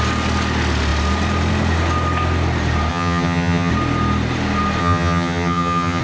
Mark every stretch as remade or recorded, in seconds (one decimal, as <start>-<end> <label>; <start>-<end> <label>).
0.0-2.9 recorded; 2.9-3.7 remade; 3.7-4.8 recorded; 4.8-6.0 remade